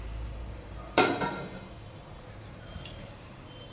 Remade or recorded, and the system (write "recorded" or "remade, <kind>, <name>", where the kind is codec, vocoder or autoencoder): remade, vocoder, BigVGAN v2